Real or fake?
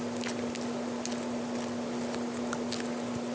real